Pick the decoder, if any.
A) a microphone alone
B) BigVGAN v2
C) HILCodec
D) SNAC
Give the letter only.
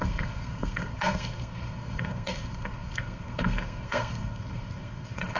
D